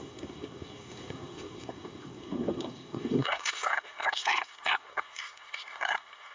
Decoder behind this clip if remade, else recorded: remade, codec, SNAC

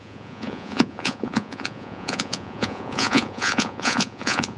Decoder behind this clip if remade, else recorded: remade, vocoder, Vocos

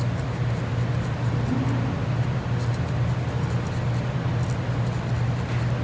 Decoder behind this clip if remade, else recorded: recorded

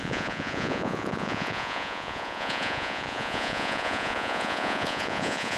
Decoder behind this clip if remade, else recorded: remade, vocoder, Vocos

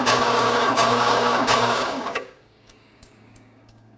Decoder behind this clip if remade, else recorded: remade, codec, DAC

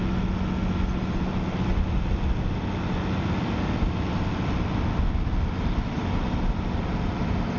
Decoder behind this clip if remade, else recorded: recorded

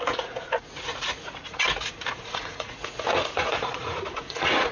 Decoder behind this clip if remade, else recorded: remade, vocoder, Vocos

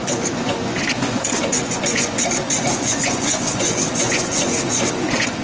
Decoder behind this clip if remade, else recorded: remade, vocoder, Vocos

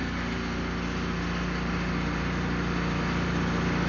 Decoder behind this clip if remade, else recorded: recorded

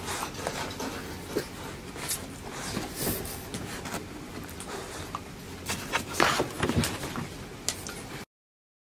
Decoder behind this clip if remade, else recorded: remade, vocoder, BigVGAN v2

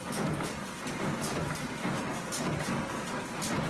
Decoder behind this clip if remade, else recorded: recorded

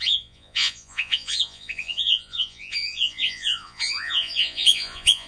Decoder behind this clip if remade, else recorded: remade, vocoder, Vocos